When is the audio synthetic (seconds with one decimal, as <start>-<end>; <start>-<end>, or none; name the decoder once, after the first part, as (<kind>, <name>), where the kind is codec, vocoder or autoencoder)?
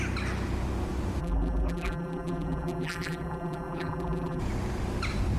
1.2-4.4 (vocoder, BigVGAN v2)